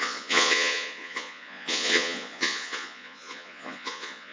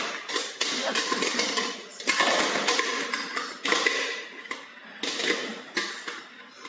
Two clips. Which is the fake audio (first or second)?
first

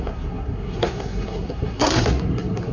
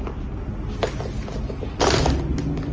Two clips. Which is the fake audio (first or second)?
first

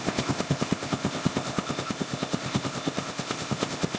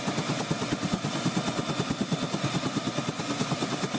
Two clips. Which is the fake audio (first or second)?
first